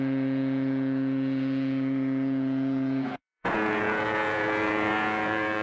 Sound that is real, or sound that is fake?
fake